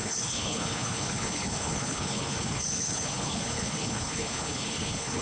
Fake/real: fake